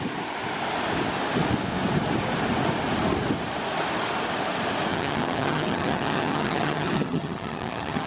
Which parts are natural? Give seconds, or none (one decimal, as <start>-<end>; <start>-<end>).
0.0-4.9